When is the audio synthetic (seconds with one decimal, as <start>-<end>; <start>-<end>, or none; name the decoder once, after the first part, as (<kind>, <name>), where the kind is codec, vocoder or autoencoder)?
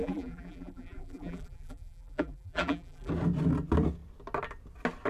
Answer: 0.0-3.1 (vocoder, BigVGAN v2)